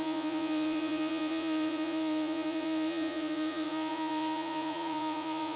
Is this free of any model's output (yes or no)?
no